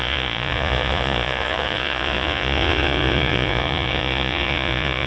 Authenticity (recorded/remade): remade